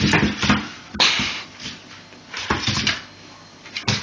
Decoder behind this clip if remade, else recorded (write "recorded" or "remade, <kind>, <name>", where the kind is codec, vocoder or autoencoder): recorded